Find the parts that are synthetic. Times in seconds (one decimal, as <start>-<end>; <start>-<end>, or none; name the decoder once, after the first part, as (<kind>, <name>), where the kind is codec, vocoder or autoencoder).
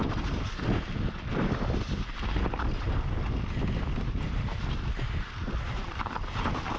none